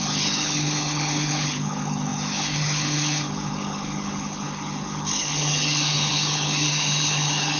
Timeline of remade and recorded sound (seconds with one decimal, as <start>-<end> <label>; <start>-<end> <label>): 0.0-7.6 remade